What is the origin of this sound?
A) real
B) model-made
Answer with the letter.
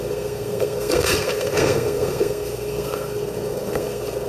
B